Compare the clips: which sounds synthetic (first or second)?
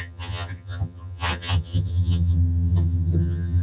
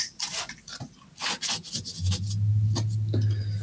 first